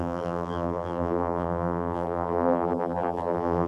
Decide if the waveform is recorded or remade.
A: remade